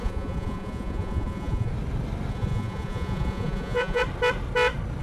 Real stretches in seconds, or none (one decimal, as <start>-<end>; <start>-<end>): 1.7-2.3; 4.0-5.0